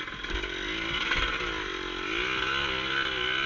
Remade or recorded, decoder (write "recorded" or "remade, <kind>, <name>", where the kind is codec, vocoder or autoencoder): recorded